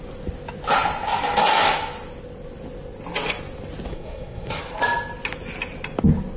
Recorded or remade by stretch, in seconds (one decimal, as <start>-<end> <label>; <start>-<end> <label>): 0.0-3.9 recorded; 3.9-4.6 remade; 4.6-6.4 recorded